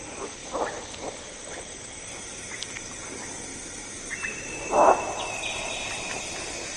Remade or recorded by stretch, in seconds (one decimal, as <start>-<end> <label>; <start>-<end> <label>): 0.0-6.8 recorded